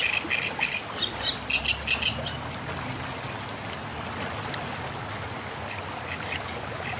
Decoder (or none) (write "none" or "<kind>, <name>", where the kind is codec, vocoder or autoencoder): none